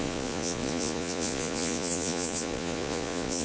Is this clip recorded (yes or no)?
no